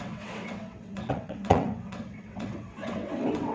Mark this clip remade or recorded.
remade